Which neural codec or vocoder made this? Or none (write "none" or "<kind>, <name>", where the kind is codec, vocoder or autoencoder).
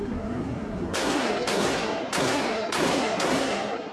codec, SNAC